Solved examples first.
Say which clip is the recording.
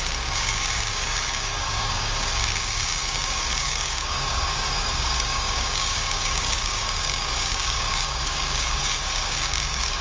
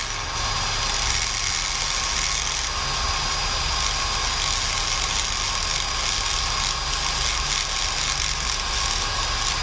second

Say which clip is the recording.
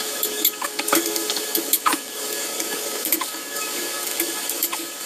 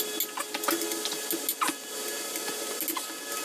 second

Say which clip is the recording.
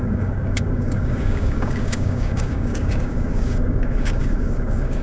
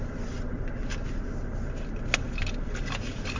second